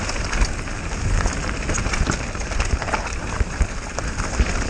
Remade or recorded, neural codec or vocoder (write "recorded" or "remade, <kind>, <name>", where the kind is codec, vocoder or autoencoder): recorded